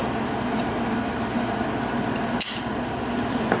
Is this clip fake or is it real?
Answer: real